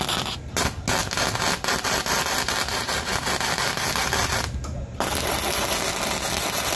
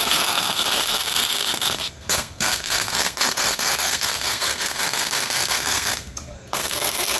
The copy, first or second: second